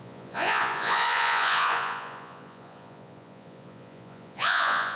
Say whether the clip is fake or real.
fake